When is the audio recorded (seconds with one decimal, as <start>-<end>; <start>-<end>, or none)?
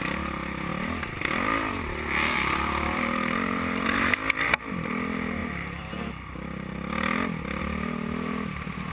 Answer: 0.0-8.9